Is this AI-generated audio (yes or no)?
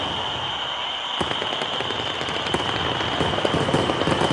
no